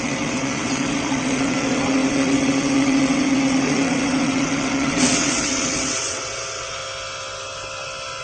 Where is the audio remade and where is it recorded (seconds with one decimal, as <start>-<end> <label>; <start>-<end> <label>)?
0.0-6.8 remade; 6.8-8.2 recorded